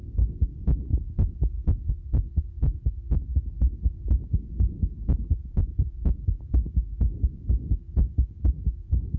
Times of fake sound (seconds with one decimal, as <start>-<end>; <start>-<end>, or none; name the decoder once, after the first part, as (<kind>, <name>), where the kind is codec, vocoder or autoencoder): none